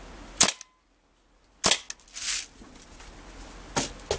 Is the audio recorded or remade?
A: recorded